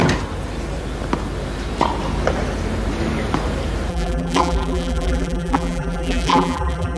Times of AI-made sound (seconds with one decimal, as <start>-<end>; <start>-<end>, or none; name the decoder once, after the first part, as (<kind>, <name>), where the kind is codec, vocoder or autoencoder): 3.9-7.0 (vocoder, BigVGAN v2)